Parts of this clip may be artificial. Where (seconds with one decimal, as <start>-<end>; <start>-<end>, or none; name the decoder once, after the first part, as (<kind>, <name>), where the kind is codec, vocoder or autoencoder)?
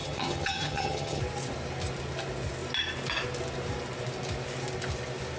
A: 0.0-1.2 (vocoder, HiFi-GAN)